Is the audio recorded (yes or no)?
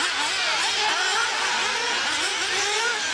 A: yes